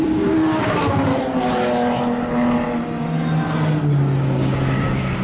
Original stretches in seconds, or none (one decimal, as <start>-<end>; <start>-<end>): 1.1-4.2